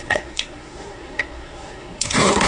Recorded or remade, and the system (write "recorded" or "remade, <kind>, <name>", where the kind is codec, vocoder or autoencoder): remade, codec, SNAC